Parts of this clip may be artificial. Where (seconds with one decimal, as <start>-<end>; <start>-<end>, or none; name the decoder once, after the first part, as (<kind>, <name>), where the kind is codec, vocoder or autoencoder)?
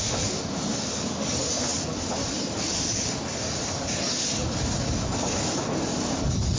none